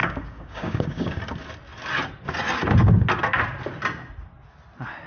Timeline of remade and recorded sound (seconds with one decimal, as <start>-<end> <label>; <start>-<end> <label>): 0.0-1.2 remade; 1.2-5.1 recorded